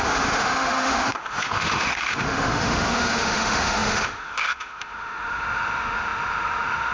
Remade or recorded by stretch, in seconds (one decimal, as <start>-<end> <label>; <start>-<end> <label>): 0.0-6.9 remade